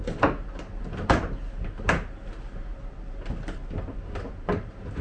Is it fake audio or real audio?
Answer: real